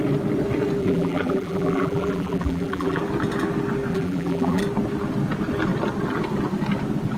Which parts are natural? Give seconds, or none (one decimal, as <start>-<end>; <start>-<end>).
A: 0.0-0.8; 3.0-3.9; 4.6-7.2